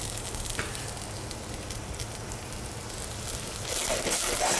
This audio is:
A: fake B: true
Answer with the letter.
B